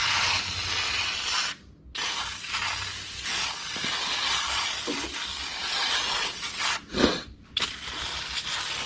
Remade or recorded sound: recorded